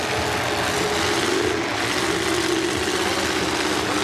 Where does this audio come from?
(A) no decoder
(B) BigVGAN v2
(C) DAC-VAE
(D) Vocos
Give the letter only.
A